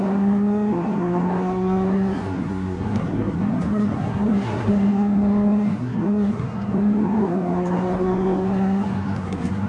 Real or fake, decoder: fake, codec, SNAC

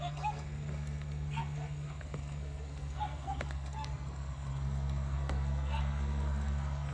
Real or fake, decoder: fake, codec, SNAC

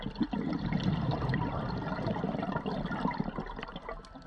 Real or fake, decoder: real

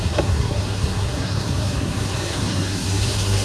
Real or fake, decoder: fake, codec, SNAC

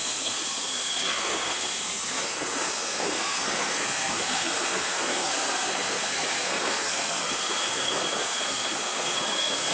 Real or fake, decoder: fake, codec, SNAC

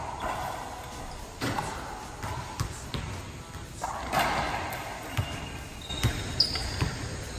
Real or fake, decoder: real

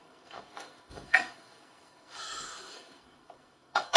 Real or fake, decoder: fake, codec, SNAC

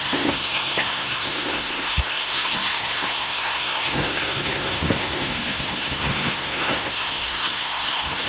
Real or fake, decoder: fake, codec, SNAC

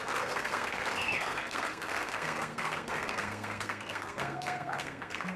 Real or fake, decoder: fake, codec, SNAC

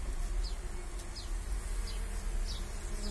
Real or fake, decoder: real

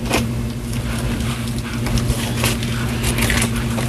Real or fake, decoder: real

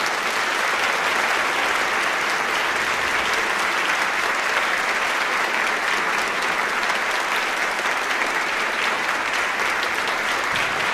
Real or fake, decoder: real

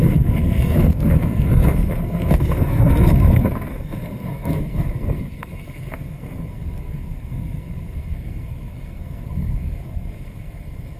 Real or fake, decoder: fake, codec, SNAC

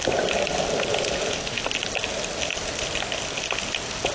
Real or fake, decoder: real